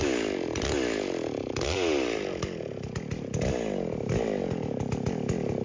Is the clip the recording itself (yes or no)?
yes